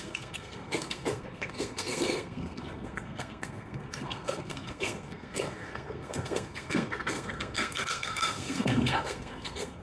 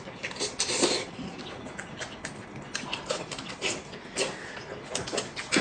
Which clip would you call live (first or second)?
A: second